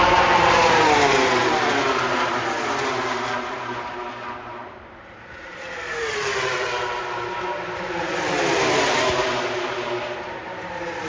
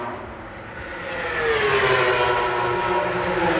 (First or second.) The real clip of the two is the second